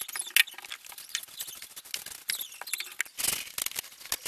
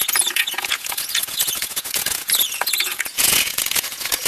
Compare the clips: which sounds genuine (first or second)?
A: first